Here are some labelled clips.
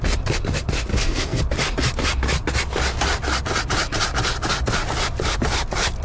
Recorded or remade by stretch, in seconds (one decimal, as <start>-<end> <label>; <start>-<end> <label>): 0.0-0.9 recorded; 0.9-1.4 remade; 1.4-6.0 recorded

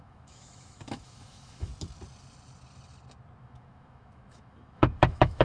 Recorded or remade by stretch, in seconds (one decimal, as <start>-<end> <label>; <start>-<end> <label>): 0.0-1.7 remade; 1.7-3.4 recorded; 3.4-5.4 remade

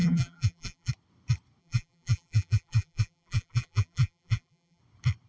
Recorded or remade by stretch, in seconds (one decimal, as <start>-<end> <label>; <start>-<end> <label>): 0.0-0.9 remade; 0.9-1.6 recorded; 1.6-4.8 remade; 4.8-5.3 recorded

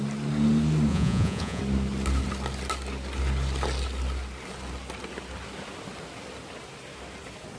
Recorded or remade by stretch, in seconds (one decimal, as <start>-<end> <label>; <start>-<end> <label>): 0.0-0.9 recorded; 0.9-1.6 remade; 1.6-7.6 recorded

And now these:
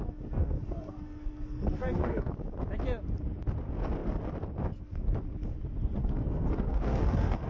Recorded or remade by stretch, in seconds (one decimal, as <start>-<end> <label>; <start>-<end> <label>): 0.0-0.4 recorded; 0.4-2.3 remade; 2.3-6.0 recorded; 6.0-7.5 remade

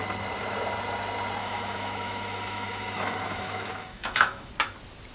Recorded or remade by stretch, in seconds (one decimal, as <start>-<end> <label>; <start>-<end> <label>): 0.0-1.4 recorded; 1.4-4.5 remade; 4.5-5.1 recorded

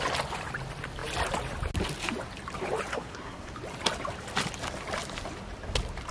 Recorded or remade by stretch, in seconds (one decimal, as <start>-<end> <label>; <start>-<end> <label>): 0.0-2.9 recorded; 2.9-3.5 remade; 3.5-6.1 recorded

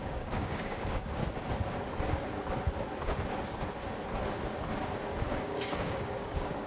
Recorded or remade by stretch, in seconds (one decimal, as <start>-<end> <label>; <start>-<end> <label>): 0.0-1.2 remade; 1.2-5.2 recorded; 5.2-6.7 remade